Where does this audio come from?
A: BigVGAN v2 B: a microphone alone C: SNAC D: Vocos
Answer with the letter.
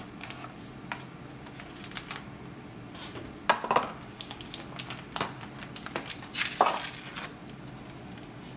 B